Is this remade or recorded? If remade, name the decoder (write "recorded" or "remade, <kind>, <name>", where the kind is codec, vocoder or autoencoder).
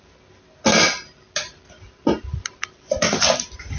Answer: recorded